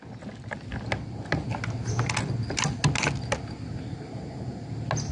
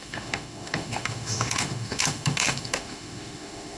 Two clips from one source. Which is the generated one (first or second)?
second